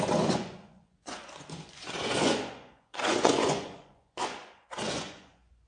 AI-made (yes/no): yes